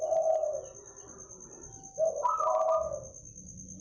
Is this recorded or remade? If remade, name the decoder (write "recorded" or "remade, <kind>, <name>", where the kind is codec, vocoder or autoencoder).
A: recorded